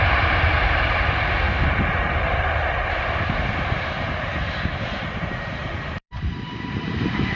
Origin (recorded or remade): remade